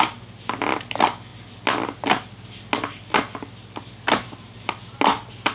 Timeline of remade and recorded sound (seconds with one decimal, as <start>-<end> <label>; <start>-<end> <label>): 0.0-5.5 recorded